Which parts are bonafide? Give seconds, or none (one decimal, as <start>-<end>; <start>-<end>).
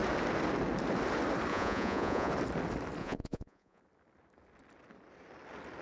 0.0-1.5; 2.3-3.0; 3.8-5.8